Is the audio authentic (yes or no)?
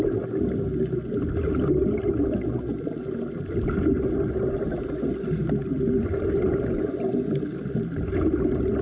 yes